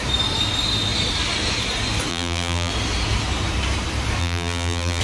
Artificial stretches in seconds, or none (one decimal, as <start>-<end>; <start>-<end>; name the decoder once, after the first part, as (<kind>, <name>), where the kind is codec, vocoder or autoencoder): 2.1-2.7 (vocoder, BigVGAN v2); 4.2-5.0